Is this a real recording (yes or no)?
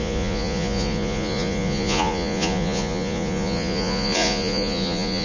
no